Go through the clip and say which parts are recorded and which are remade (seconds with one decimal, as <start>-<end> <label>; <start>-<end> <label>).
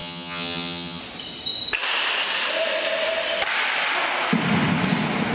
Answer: 0.0-1.0 remade; 1.0-5.3 recorded